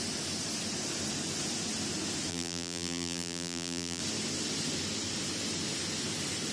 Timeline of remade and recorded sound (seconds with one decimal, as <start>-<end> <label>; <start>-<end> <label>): 0.0-2.3 recorded; 2.3-4.0 remade; 4.0-6.5 recorded